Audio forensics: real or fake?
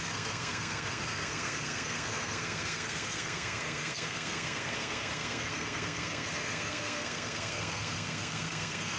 fake